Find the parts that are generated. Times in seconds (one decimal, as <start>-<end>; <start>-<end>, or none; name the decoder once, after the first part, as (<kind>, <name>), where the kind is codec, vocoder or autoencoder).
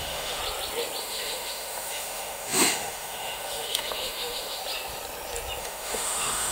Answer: 0.0-0.4 (autoencoder, DAC-VAE); 1.0-4.6; 5.6-6.5